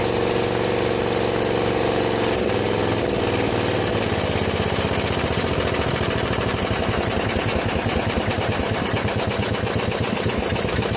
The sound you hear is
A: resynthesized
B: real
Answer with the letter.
B